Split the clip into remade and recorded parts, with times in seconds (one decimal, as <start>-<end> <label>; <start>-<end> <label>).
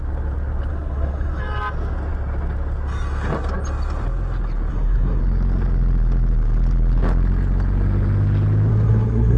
0.0-0.7 recorded; 0.7-1.4 remade; 1.4-4.7 recorded; 4.7-5.2 remade; 5.2-8.7 recorded; 8.7-9.4 remade